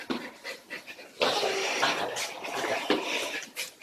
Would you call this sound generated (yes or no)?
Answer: no